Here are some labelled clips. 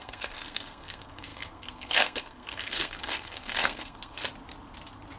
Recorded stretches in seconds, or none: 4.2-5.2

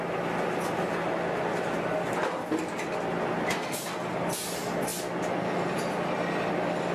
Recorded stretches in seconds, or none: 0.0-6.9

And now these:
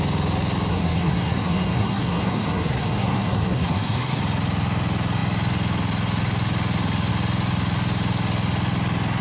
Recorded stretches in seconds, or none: 0.0-0.7; 4.2-9.2

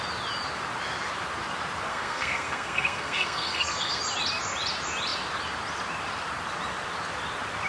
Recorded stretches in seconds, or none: 0.0-1.9; 4.0-7.7

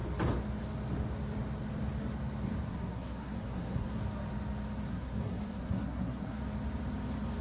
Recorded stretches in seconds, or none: 0.0-2.7; 4.0-4.9; 6.4-7.4

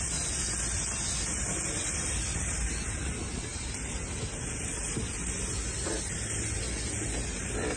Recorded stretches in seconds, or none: 0.0-7.8

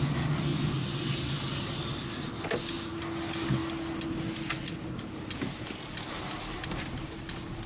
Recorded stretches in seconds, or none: 0.0-7.7

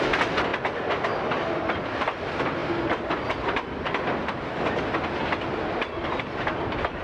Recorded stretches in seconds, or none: 0.0-7.0